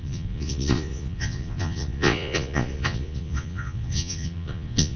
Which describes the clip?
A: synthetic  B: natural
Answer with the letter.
A